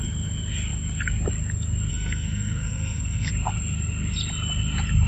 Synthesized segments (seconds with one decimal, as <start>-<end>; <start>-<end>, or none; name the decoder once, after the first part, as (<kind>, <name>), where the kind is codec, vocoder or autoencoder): 1.9-3.3 (codec, SNAC)